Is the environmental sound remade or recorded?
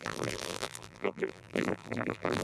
remade